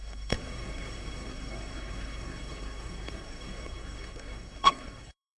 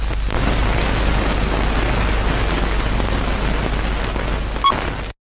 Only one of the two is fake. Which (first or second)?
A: first